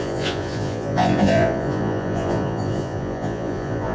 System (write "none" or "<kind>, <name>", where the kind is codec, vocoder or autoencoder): vocoder, Vocos